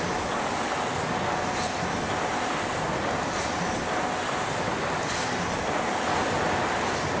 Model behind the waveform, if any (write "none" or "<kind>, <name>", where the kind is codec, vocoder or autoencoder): none